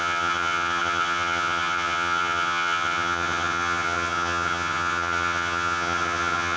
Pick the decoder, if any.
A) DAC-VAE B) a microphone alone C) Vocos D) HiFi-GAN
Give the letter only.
D